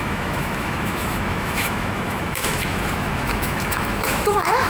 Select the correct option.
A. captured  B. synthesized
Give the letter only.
B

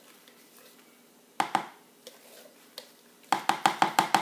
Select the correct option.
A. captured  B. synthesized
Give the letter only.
A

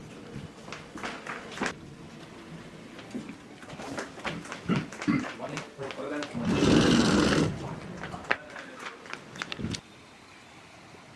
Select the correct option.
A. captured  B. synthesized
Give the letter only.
A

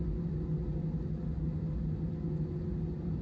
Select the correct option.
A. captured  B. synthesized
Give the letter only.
A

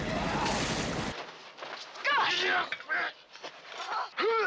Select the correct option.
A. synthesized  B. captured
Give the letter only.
B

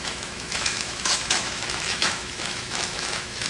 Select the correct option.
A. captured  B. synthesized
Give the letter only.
B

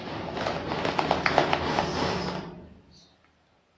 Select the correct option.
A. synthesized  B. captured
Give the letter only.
B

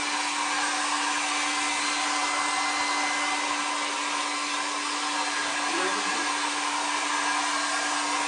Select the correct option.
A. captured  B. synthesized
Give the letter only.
A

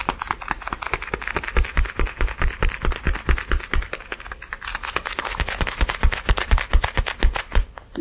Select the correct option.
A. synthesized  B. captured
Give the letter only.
B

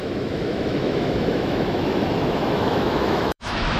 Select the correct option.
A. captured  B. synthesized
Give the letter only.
B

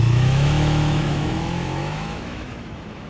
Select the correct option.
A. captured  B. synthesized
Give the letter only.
B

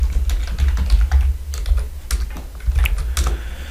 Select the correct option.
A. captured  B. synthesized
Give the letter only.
A